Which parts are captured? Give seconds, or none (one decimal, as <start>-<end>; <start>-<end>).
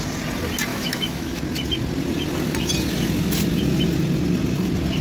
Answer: 0.0-0.7; 1.4-5.0